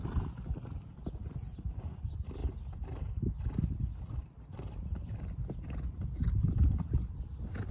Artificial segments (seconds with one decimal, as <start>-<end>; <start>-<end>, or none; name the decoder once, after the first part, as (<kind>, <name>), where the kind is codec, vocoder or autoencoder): none